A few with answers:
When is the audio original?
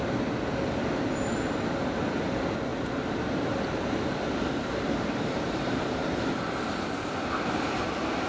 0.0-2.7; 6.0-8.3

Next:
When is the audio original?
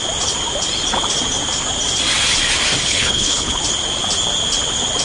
0.0-2.8; 3.6-5.0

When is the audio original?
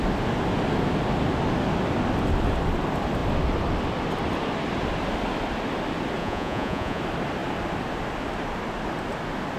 0.0-6.2; 7.0-9.6